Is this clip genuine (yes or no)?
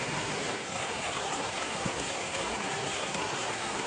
no